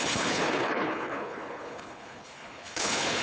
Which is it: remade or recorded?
remade